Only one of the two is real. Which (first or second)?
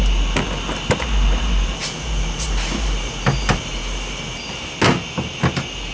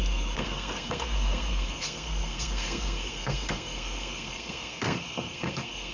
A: first